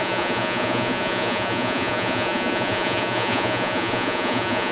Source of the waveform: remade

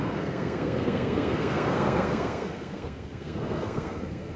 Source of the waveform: remade